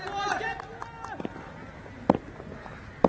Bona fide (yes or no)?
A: yes